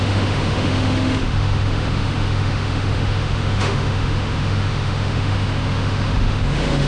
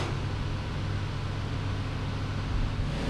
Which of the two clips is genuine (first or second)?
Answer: second